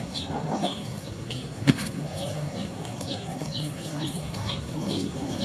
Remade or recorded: remade